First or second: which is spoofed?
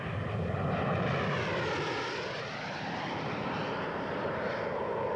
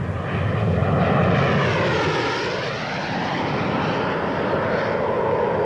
first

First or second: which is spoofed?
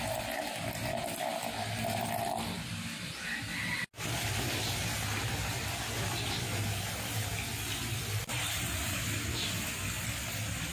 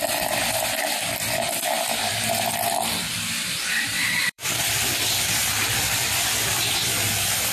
second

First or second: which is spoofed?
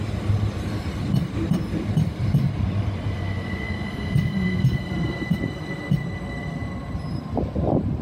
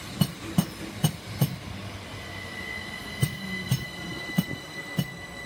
first